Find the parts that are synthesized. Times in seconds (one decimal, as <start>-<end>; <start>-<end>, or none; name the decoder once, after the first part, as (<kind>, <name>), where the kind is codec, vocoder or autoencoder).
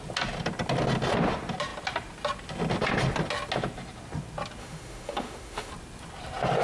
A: 4.6-5.7 (autoencoder, DAC-VAE)